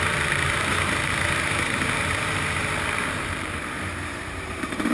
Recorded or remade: remade